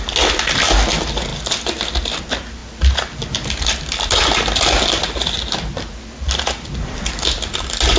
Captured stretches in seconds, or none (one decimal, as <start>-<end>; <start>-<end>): 0.0-8.0